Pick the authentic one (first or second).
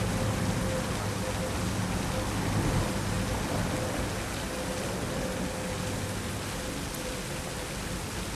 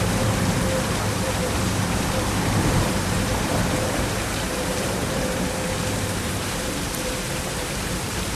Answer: first